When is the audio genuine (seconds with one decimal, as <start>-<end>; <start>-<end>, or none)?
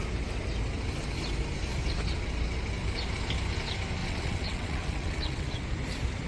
0.0-4.0; 5.6-6.3